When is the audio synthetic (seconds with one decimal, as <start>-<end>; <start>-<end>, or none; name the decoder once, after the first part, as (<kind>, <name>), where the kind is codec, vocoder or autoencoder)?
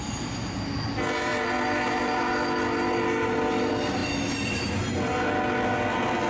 none